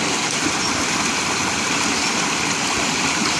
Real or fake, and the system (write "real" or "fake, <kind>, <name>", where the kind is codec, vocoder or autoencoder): fake, vocoder, BigVGAN v2